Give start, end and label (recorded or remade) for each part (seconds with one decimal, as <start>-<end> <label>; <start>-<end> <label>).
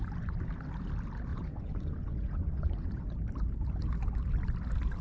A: 0.0-1.3 recorded; 1.3-3.0 remade; 3.0-5.0 recorded